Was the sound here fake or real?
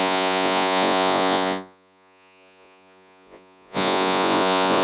fake